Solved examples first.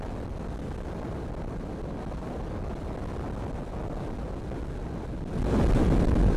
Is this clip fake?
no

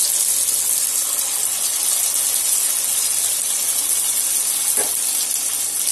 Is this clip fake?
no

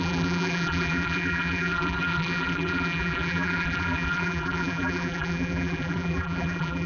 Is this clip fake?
yes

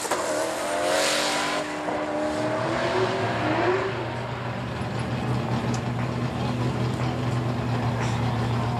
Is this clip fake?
no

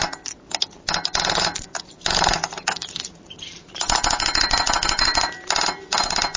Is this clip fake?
yes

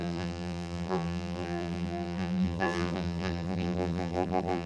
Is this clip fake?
yes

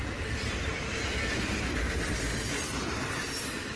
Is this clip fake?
no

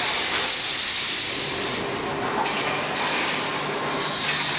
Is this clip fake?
yes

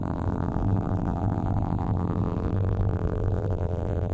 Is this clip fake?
yes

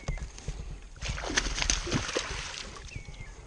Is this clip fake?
no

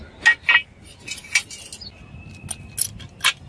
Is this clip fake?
no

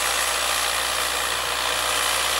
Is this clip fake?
no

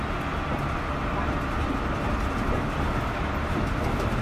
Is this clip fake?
no